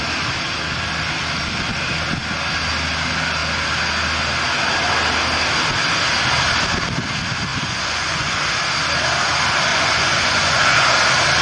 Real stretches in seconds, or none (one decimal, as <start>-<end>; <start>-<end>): 0.0-7.5; 8.4-9.7; 10.9-11.4